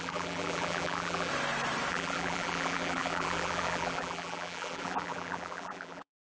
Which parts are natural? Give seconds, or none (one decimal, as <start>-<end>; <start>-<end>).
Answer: 1.3-1.9